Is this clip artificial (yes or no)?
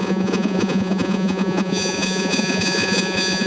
yes